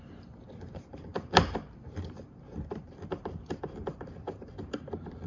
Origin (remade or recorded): remade